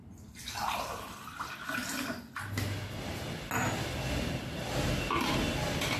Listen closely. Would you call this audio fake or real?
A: real